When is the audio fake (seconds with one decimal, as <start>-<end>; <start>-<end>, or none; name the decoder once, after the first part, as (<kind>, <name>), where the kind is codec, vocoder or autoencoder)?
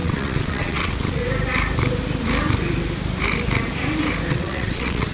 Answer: 0.0-1.2 (vocoder, WaveNeXt); 4.3-5.1